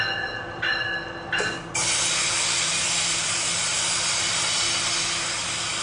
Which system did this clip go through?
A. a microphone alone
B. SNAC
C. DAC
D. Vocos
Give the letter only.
A